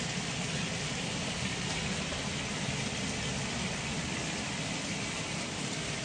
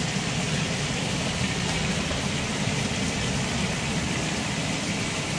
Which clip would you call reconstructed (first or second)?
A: second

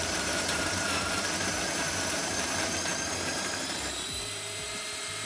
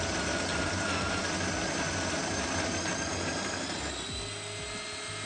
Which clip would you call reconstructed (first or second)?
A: first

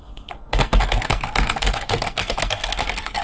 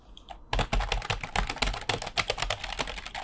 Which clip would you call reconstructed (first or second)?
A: first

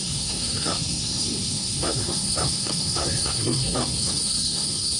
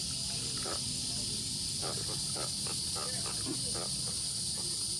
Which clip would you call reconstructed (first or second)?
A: first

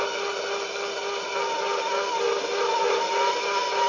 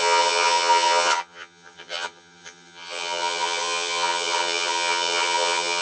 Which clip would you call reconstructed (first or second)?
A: second